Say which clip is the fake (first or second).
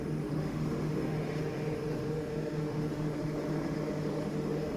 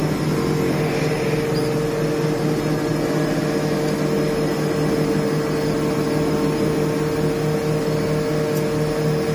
first